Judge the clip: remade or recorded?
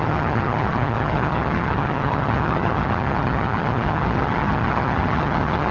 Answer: remade